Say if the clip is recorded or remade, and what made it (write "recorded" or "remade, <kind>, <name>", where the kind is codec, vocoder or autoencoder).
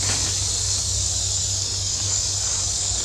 remade, codec, DAC